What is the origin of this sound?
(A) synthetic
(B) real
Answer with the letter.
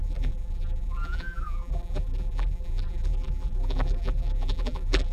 A